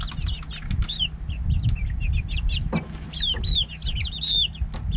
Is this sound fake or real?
real